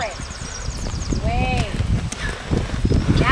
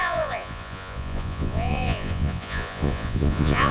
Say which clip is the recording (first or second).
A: first